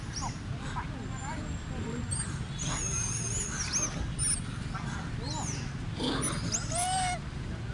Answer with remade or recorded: recorded